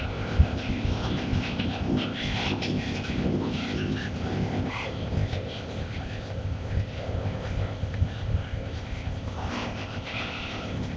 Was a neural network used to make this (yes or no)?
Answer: yes